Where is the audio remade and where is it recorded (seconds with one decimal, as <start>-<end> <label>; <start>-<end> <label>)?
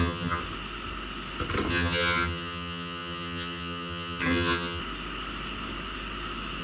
0.0-0.4 remade; 0.4-1.7 recorded; 1.7-4.8 remade; 4.8-6.6 recorded